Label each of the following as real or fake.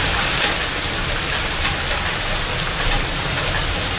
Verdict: real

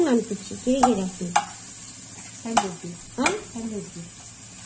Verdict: real